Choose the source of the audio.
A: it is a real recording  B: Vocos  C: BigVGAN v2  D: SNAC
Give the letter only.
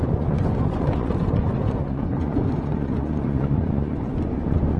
B